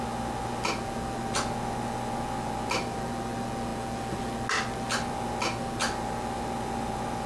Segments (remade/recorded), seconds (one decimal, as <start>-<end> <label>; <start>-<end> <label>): 0.0-7.3 recorded

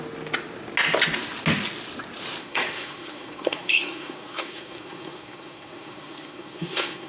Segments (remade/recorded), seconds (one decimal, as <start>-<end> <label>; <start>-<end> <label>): 0.0-2.4 recorded; 2.4-7.1 remade